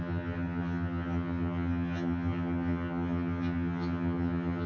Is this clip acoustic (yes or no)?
no